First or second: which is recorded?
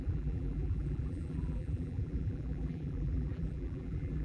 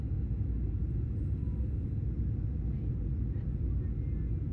second